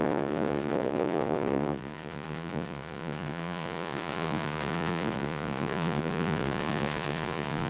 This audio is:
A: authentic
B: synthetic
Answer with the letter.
B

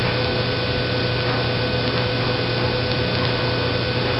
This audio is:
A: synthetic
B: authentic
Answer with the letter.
B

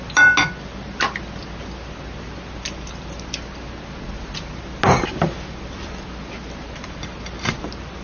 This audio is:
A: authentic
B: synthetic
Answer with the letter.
A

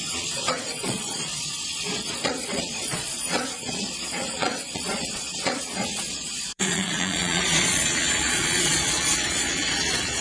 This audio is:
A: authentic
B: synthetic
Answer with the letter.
B